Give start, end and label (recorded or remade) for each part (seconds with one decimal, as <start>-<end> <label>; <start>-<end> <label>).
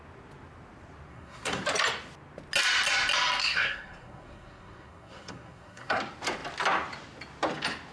0.0-1.1 recorded; 1.1-1.6 remade; 1.6-3.4 recorded; 3.4-6.0 remade; 6.0-7.9 recorded